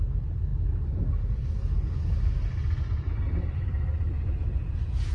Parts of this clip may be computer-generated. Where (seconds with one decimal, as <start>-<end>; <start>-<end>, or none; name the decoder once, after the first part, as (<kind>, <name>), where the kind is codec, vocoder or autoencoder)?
none